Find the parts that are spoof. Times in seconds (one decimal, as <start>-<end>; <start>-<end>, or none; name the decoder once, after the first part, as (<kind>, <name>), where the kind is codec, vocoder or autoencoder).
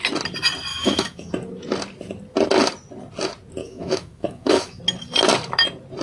0.7-1.3 (autoencoder, DAC-VAE); 3.6-4.8